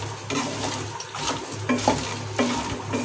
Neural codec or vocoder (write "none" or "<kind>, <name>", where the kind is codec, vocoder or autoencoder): none